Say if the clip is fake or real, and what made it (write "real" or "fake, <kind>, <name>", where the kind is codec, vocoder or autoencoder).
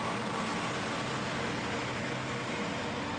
real